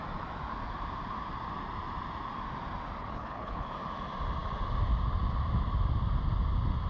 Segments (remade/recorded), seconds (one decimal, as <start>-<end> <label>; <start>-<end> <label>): 0.0-3.0 recorded; 3.0-3.7 remade; 3.7-6.9 recorded